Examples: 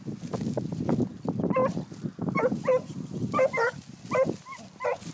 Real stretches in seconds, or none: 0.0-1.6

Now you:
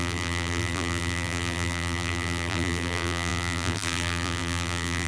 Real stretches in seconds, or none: none

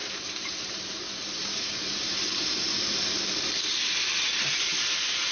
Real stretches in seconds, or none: 3.2-4.7